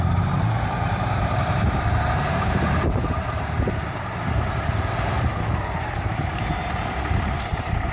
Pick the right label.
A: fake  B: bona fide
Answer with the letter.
A